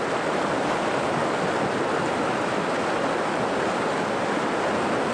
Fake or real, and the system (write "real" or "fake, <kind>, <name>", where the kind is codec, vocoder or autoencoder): real